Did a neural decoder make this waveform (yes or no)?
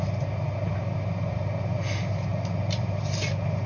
no